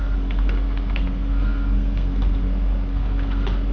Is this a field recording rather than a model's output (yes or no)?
no